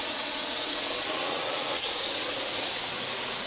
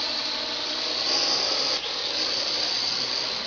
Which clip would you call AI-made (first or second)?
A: first